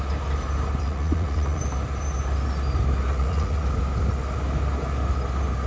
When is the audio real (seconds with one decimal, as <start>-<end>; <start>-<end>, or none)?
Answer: 0.0-0.8; 1.6-3.1; 3.6-5.7